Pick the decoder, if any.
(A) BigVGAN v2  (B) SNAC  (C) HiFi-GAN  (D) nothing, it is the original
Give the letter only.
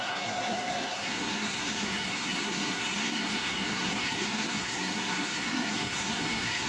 B